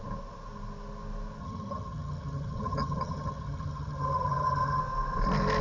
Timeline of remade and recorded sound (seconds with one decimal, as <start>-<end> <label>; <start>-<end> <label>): 0.0-1.4 recorded; 1.4-4.8 remade; 4.8-5.6 recorded